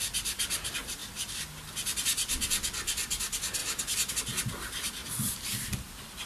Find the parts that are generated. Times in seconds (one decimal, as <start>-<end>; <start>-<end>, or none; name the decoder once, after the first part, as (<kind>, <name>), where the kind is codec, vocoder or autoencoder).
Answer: none

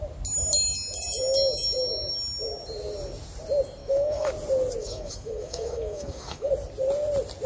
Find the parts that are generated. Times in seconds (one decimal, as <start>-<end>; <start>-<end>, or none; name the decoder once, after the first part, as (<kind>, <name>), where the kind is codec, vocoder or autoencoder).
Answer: 3.8-4.3 (autoencoder, DAC-VAE); 4.8-6.5